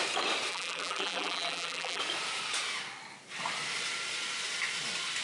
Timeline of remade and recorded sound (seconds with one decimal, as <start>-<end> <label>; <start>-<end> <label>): 0.0-0.5 recorded; 0.5-2.0 remade; 2.0-5.2 recorded